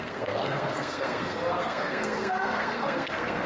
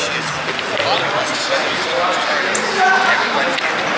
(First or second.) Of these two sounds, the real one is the second